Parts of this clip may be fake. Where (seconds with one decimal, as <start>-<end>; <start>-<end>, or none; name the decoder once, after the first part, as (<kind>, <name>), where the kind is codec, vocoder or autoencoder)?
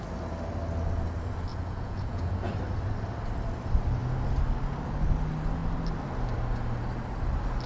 1.5-2.4 (vocoder, Vocos)